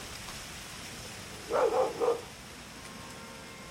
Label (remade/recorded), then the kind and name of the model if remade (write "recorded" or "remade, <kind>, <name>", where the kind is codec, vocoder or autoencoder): recorded